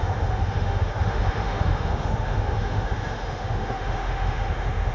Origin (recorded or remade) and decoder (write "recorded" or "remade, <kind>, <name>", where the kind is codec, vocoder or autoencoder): remade, autoencoder, DAC-VAE